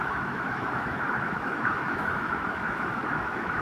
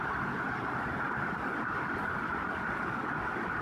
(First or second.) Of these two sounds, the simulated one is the first